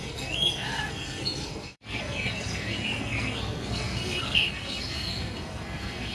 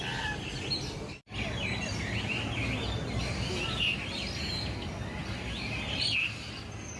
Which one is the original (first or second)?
second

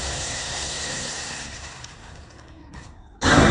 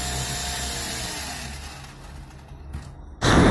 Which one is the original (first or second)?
second